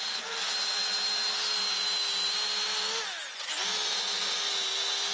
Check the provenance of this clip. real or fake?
real